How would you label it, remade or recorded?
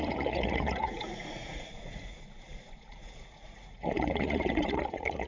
remade